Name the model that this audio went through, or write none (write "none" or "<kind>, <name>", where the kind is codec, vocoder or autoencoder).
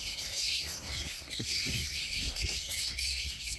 codec, SNAC